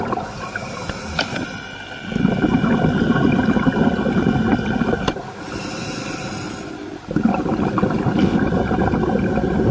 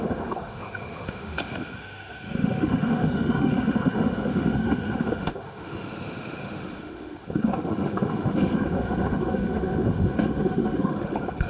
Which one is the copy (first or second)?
second